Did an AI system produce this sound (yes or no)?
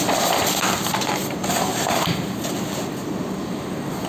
no